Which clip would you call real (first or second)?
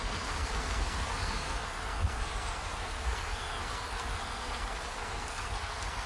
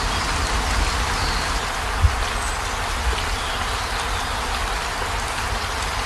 second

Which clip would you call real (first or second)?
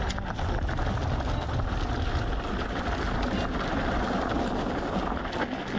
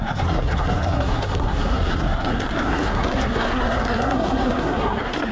first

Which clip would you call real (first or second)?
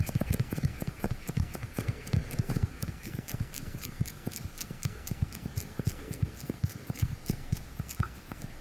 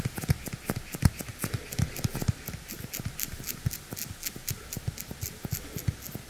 second